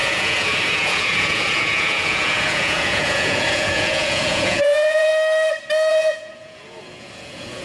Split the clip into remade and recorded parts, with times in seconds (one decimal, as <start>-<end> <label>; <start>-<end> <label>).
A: 0.0-5.1 remade; 5.1-5.9 recorded; 5.9-7.6 remade